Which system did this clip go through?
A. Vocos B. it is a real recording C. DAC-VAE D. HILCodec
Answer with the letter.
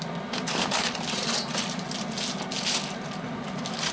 B